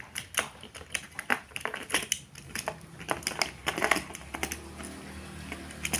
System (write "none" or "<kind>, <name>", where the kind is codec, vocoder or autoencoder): none